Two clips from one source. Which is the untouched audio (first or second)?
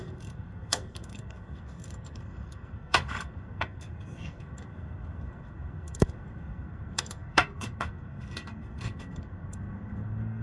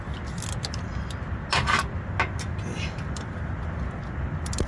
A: second